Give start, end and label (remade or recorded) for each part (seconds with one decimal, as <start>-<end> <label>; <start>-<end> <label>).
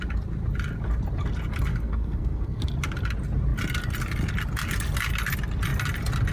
0.0-1.7 recorded; 1.7-2.6 remade; 2.6-6.3 recorded